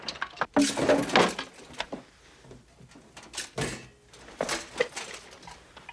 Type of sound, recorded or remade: recorded